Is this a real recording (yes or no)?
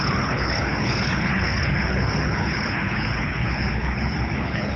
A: no